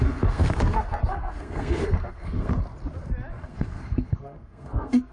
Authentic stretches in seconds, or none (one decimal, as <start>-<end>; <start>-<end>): 2.5-3.3